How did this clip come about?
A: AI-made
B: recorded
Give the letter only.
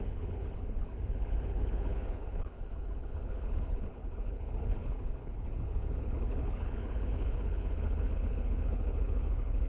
A